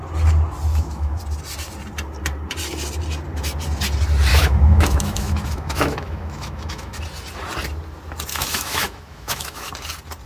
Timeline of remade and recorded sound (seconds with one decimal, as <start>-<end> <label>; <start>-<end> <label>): 0.0-0.7 recorded; 0.7-1.2 remade; 1.2-4.3 recorded; 4.3-7.0 remade; 7.0-8.3 recorded; 8.3-9.7 remade; 9.7-10.3 recorded